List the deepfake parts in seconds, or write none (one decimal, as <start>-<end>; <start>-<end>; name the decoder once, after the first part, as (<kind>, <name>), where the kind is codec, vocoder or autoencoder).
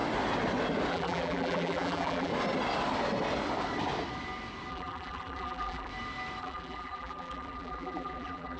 0.9-2.3 (vocoder, BigVGAN v2); 4.7-5.9; 6.4-8.6